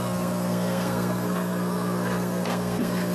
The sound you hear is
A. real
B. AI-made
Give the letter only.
B